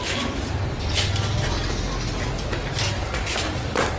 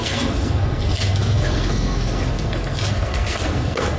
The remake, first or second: second